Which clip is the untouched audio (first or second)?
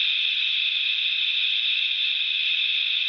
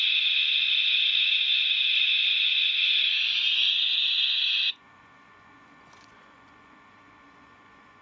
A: first